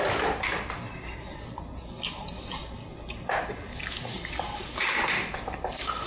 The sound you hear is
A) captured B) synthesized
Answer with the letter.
A